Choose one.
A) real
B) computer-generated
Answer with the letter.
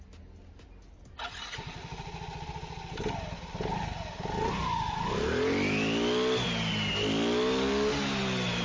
A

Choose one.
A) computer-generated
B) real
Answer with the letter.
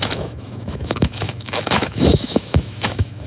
A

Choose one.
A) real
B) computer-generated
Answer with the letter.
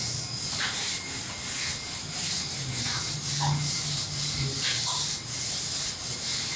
A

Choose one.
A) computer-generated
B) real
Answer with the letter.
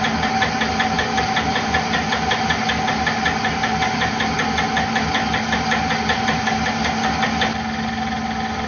B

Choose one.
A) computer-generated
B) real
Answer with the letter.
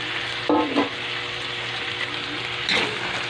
B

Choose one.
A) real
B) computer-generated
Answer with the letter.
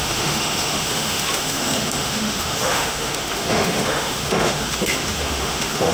B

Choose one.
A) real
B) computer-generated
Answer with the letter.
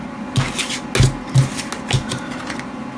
A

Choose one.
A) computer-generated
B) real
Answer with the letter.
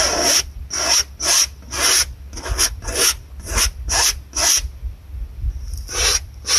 B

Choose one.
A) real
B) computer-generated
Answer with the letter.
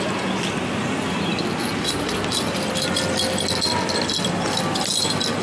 A